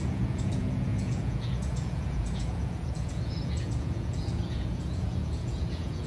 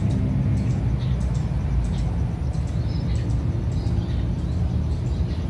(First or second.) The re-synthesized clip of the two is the first